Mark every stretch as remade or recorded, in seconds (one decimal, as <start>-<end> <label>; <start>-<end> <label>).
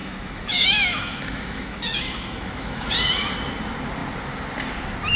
0.0-2.9 remade; 2.9-5.2 recorded